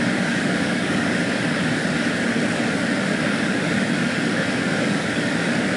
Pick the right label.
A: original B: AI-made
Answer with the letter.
B